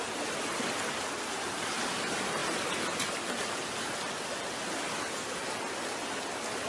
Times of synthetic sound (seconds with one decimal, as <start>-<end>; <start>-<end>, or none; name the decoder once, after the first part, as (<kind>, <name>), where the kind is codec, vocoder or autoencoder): none